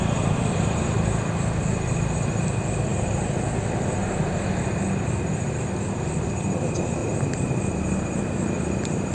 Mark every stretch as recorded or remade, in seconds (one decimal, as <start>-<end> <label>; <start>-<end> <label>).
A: 0.0-7.0 recorded; 7.0-8.6 remade; 8.6-9.1 recorded